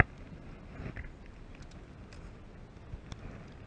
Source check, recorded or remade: recorded